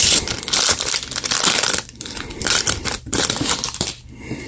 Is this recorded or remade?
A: remade